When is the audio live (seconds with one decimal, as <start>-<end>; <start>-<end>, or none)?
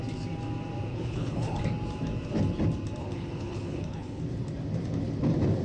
0.0-0.9; 1.6-3.0; 4.2-5.6